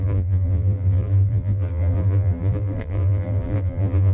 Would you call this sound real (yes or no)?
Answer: no